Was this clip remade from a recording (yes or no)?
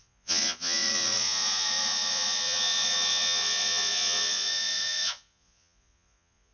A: yes